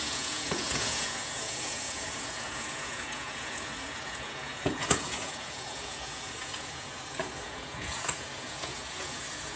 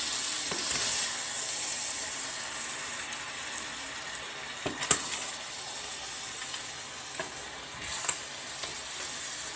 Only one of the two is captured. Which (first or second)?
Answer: second